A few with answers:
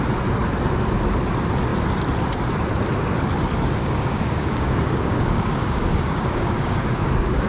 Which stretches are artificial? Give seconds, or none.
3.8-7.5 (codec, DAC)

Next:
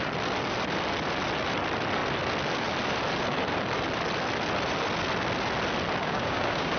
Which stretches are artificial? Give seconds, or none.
6.0-6.8 (codec, DAC)

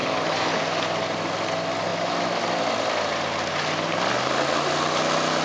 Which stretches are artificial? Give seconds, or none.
0.0-0.6 (codec, DAC)

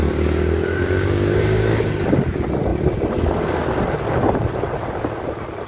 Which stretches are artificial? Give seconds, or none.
0.0-1.9 (codec, DAC)

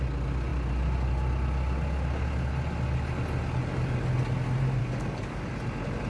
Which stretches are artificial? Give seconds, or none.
4.8-5.5 (codec, DAC)

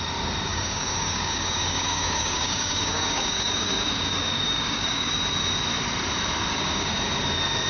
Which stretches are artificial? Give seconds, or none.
0.5-5.1 (codec, DAC); 6.5-7.0